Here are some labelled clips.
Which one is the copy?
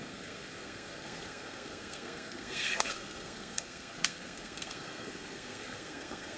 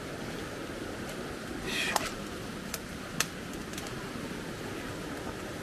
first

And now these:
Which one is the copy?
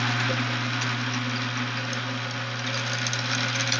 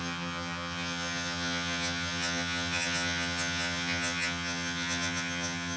second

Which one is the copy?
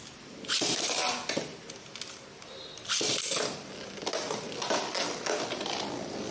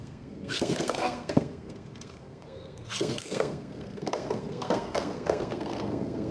second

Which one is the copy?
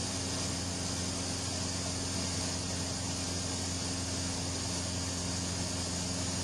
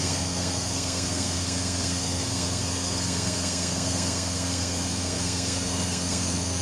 second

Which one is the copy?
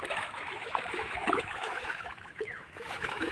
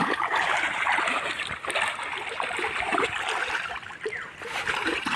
first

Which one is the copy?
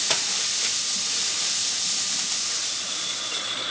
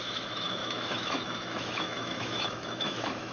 second